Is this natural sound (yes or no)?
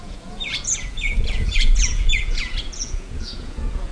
no